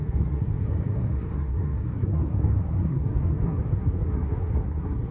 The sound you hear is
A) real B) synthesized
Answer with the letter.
B